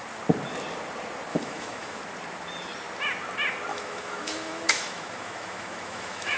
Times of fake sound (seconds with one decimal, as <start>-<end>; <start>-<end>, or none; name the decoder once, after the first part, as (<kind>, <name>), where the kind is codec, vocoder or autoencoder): 1.3-2.0 (autoencoder, DAC-VAE); 3.7-6.4